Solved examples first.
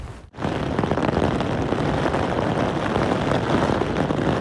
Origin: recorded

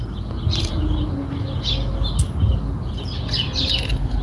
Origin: recorded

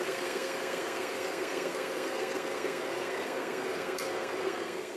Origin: remade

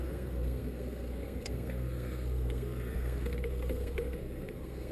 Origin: remade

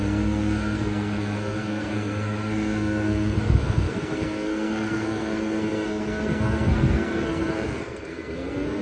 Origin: remade